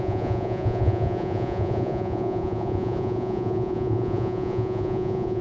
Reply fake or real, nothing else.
fake